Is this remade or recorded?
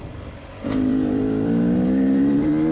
remade